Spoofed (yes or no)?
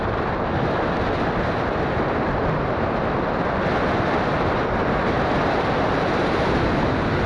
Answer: no